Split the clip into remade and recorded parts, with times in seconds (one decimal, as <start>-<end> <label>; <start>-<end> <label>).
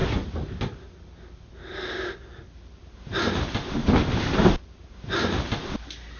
0.0-6.2 recorded